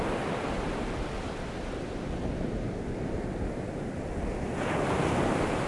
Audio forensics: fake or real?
real